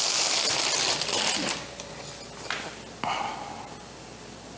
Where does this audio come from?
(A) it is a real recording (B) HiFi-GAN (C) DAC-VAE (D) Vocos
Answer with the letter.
A